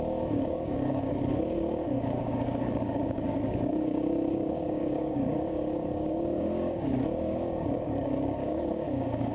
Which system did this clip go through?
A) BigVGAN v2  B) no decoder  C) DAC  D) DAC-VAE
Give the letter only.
C